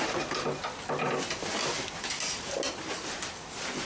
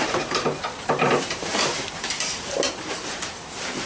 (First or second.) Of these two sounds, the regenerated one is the second